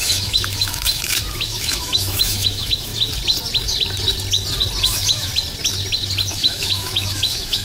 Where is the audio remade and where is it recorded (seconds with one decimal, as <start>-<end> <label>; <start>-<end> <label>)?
0.0-2.9 remade; 2.9-4.8 recorded; 4.8-5.3 remade; 5.3-6.3 recorded; 6.3-7.6 remade